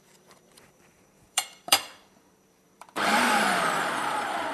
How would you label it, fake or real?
fake